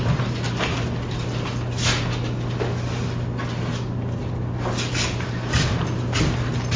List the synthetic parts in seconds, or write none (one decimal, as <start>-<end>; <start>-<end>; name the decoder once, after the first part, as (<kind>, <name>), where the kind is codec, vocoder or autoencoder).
none